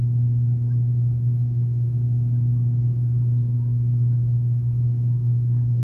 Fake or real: fake